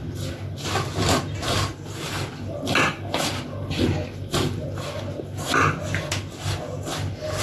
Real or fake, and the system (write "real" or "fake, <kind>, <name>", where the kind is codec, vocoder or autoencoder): real